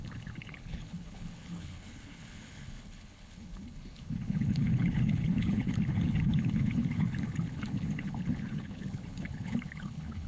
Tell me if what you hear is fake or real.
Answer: fake